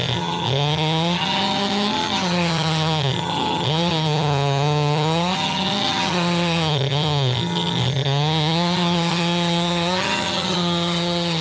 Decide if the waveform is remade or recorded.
remade